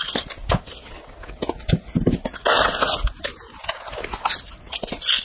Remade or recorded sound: recorded